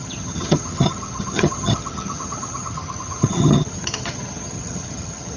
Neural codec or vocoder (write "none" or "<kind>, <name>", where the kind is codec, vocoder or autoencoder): vocoder, HiFi-GAN